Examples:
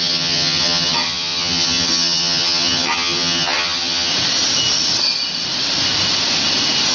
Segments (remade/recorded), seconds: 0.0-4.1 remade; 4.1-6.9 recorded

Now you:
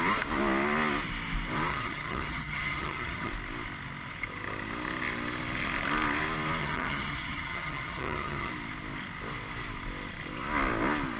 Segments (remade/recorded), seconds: 0.0-1.7 recorded; 1.7-3.3 remade; 3.3-6.6 recorded; 6.6-8.5 remade; 8.5-11.2 recorded

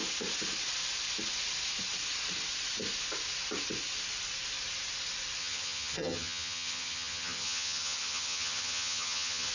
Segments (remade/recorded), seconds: 0.0-5.4 recorded; 5.4-9.5 remade

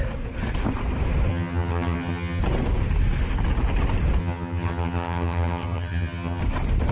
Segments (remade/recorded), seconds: 0.0-1.3 recorded; 1.3-2.4 remade; 2.4-4.2 recorded; 4.2-6.4 remade; 6.4-6.9 recorded

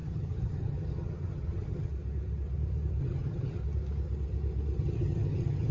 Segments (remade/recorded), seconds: 0.0-1.9 remade; 1.9-3.0 recorded; 3.0-3.6 remade; 3.6-4.8 recorded; 4.8-5.7 remade

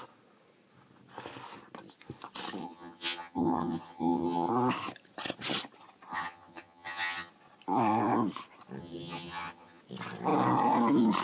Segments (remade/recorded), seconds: 0.0-2.6 recorded; 2.6-4.5 remade; 4.5-6.1 recorded; 6.1-7.3 remade; 7.3-8.8 recorded; 8.8-9.8 remade; 9.8-11.2 recorded

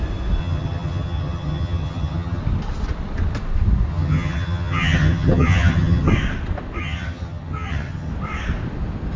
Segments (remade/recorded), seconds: 0.0-0.4 recorded; 0.4-2.4 remade; 2.4-3.9 recorded; 3.9-6.1 remade; 6.1-6.8 recorded; 6.8-8.1 remade; 8.1-9.2 recorded